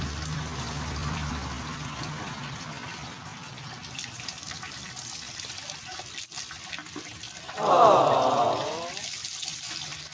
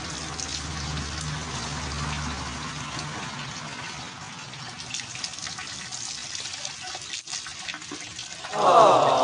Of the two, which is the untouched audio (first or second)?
second